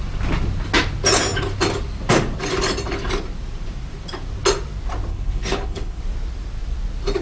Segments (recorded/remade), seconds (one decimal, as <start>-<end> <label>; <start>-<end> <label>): 0.0-5.1 recorded; 5.1-6.0 remade; 6.0-7.2 recorded